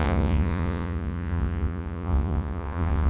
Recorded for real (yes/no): no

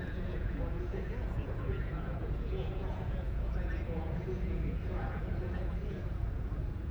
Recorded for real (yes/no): no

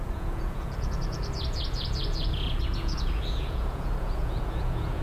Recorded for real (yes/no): no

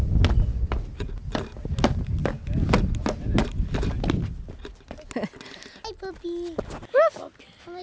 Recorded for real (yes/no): yes